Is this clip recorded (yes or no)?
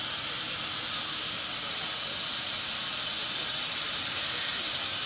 yes